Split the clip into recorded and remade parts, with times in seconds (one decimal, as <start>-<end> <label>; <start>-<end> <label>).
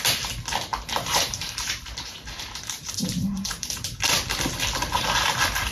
0.0-0.7 recorded; 0.7-4.1 remade; 4.1-5.7 recorded